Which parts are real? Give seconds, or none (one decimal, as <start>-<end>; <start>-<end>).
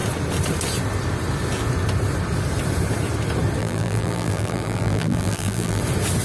0.0-3.6; 5.8-6.2